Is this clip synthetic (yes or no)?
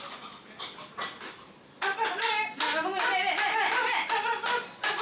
no